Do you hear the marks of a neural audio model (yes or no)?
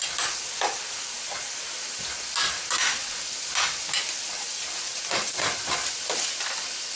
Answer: no